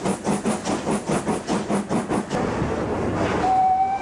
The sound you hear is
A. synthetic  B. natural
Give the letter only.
B